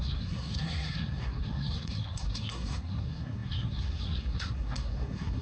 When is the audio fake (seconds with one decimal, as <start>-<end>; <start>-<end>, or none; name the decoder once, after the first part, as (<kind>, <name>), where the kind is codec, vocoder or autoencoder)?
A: 0.0-5.4 (codec, SNAC)